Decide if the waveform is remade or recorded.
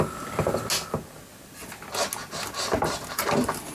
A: recorded